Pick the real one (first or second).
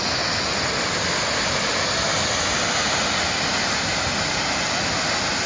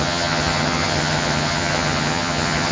first